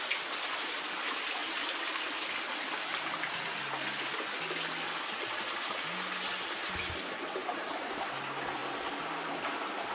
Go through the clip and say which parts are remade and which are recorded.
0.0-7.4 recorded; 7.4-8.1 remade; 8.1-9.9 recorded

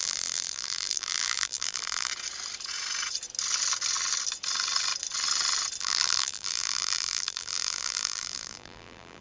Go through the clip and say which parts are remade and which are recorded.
0.0-2.1 remade; 2.1-5.8 recorded; 5.8-9.2 remade

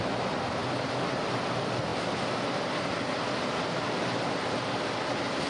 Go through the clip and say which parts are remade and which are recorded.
0.0-1.9 recorded; 1.9-3.6 remade; 3.6-5.5 recorded

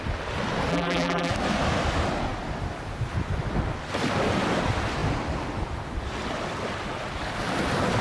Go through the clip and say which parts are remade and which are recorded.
0.0-0.7 recorded; 0.7-1.3 remade; 1.3-8.0 recorded

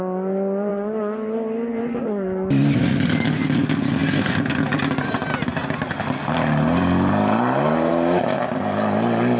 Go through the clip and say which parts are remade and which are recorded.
0.0-0.7 recorded; 0.7-1.8 remade; 1.8-5.5 recorded; 5.5-7.9 remade; 7.9-9.4 recorded

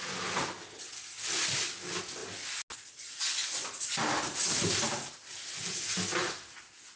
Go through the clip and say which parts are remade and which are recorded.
0.0-7.0 recorded

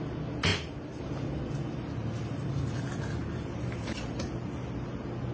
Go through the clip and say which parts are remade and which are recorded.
0.0-0.5 recorded; 0.5-1.0 remade; 1.0-3.2 recorded; 3.2-4.6 remade; 4.6-5.3 recorded